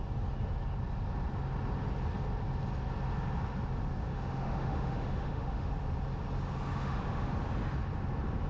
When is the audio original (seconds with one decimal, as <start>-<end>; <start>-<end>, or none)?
0.0-4.1; 5.7-6.7; 7.3-8.5